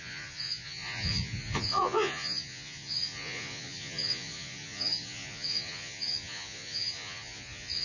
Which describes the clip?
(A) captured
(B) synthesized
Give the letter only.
B